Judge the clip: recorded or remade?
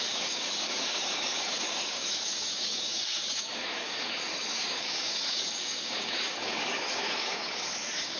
remade